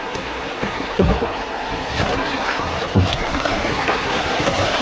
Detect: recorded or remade remade